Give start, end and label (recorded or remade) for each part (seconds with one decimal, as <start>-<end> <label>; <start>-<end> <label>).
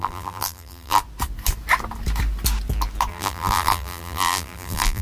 0.0-1.0 remade; 1.0-3.1 recorded; 3.1-5.0 remade